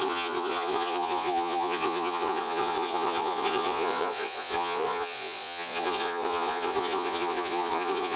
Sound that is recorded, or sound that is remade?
remade